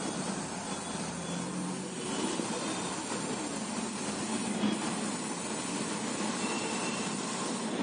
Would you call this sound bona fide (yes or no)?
yes